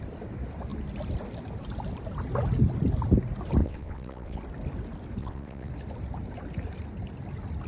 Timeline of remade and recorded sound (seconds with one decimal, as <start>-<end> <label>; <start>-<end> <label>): 0.0-3.6 recorded; 3.6-4.4 remade; 4.4-5.2 recorded; 5.2-5.7 remade; 5.7-7.7 recorded